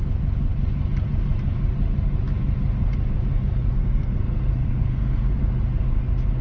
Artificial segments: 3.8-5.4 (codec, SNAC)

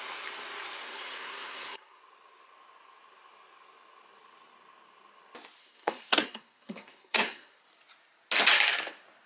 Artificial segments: 0.8-2.0 (codec, SNAC); 5.6-7.6

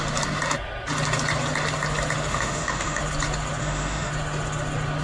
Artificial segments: 2.3-3.0 (autoencoder, DAC-VAE); 3.6-4.1

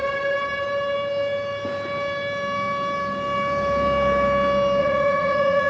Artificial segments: 4.8-5.7 (vocoder, Vocos)

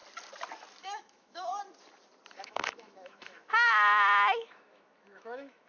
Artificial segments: 0.8-1.5 (autoencoder, DAC-VAE); 2.4-5.7

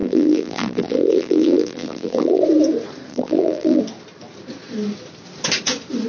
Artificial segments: 0.0-2.4 (vocoder, BigVGAN v2); 3.1-3.8

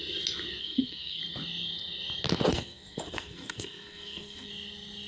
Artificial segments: 0.6-1.2 (codec, SNAC); 2.5-4.5

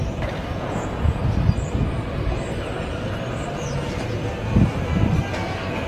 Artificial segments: 0.5-1.2 (vocoder, Vocos)